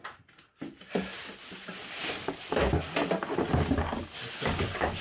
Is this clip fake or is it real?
real